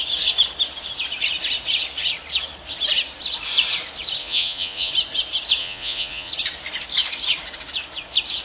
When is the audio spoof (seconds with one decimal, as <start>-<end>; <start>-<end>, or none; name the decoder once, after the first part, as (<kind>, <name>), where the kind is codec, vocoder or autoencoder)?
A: 4.2-4.9 (vocoder, Vocos); 5.6-6.3